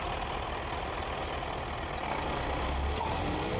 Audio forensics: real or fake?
real